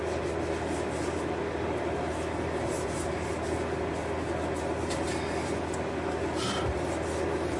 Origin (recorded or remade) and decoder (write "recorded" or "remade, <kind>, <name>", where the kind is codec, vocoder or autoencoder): recorded